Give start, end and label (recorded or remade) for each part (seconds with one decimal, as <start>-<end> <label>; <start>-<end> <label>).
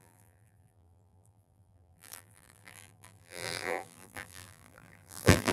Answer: 0.0-5.5 remade